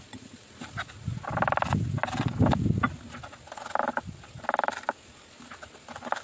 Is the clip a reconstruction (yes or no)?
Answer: no